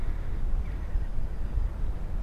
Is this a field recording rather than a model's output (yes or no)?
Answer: no